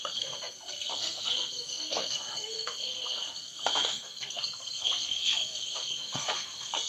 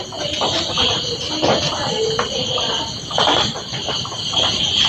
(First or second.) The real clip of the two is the second